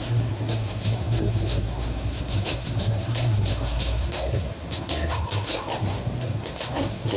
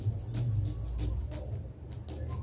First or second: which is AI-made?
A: first